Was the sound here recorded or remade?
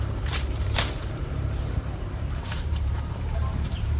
remade